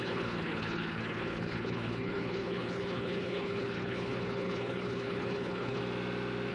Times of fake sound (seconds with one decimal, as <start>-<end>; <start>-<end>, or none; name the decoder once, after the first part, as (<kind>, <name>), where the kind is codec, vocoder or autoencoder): 0.0-5.8 (codec, HILCodec)